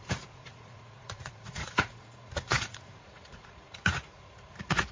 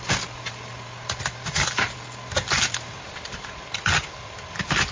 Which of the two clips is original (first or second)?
second